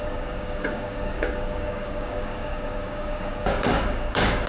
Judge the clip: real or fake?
fake